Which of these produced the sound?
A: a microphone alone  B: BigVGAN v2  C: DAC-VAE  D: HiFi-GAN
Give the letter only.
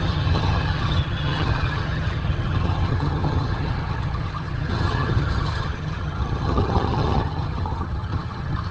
D